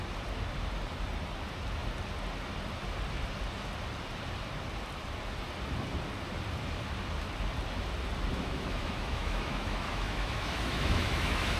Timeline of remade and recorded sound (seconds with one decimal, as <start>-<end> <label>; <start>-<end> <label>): 0.0-8.3 recorded; 8.3-11.6 remade